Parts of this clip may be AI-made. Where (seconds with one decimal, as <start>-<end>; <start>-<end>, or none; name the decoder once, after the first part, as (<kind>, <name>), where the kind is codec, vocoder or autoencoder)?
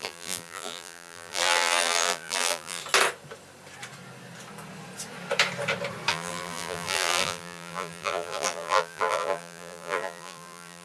0.0-2.8 (vocoder, BigVGAN v2); 6.1-10.8